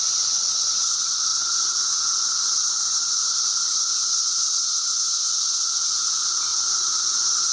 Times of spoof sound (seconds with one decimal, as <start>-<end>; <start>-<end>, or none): 0.0-7.5